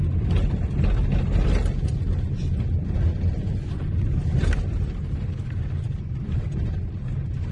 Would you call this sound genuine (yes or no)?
yes